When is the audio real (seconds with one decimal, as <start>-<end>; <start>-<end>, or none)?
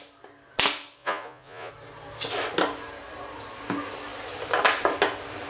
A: 0.0-1.0; 1.7-5.5